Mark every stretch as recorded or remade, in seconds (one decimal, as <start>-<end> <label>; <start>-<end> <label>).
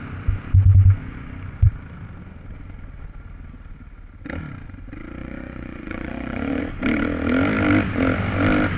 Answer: 0.0-1.0 recorded; 1.0-1.7 remade; 1.7-5.2 recorded; 5.2-6.6 remade; 6.6-8.8 recorded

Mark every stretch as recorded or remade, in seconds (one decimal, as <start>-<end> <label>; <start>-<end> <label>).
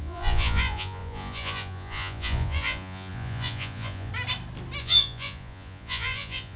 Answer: 0.0-4.1 remade; 4.1-4.8 recorded; 4.8-6.6 remade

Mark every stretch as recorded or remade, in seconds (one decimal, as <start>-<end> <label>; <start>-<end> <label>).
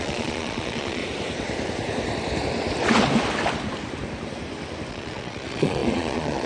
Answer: 0.0-1.0 remade; 1.0-4.9 recorded; 4.9-6.5 remade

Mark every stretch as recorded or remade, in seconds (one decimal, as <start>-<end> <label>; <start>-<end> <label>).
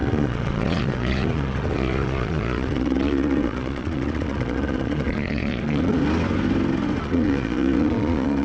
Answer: 0.0-6.0 remade; 6.0-7.0 recorded; 7.0-8.4 remade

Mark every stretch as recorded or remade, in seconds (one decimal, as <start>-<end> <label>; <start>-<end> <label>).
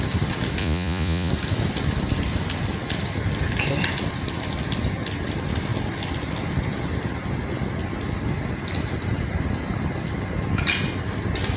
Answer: 0.0-0.6 recorded; 0.6-1.3 remade; 1.3-11.6 recorded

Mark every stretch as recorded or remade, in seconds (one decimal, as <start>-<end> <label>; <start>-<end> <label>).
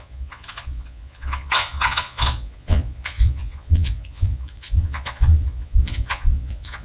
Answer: 0.0-6.8 remade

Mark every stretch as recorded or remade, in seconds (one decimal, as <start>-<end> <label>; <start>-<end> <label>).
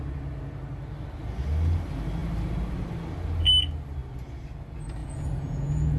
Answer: 0.0-5.0 recorded; 5.0-6.0 remade